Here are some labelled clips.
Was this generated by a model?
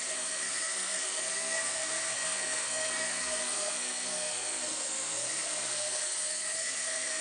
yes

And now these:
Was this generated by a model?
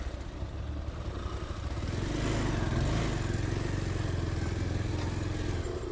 no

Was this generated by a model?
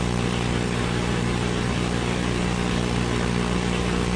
no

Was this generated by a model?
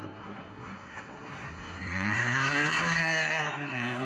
yes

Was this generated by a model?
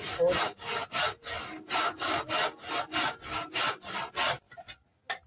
no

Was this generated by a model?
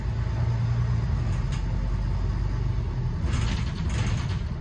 no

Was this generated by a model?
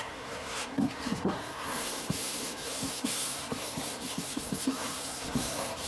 yes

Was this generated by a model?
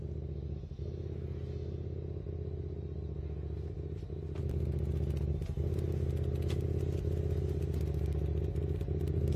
no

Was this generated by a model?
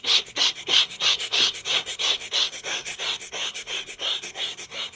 yes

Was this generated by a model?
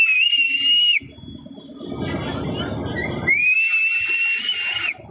no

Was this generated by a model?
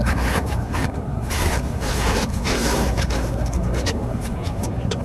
yes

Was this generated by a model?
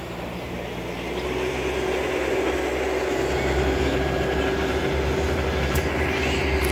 no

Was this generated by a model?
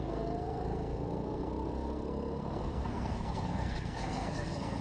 yes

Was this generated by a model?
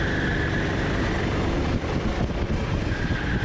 no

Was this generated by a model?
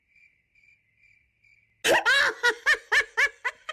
no